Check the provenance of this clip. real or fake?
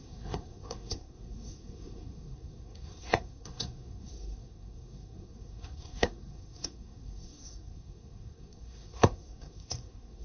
fake